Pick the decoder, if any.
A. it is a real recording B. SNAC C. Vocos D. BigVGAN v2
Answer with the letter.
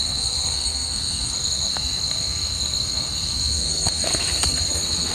B